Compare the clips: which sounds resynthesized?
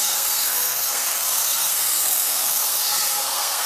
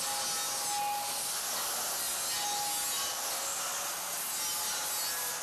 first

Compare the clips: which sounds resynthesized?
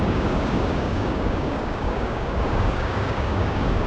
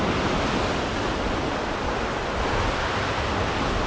first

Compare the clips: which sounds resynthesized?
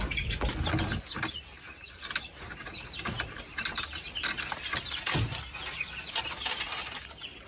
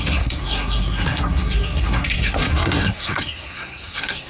second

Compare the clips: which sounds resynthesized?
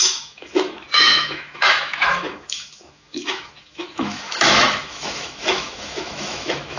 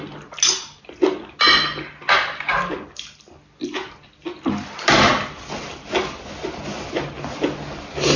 first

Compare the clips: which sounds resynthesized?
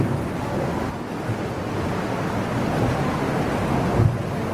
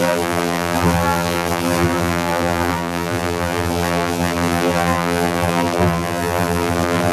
second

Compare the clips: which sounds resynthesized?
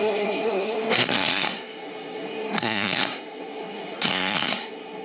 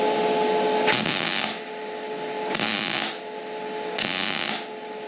first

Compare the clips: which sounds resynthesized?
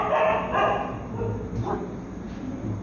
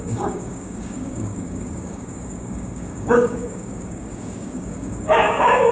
second